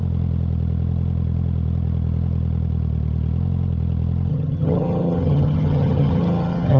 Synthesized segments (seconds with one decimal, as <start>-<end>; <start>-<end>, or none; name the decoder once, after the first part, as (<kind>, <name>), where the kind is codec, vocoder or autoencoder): 4.3-6.8 (vocoder, HiFi-GAN)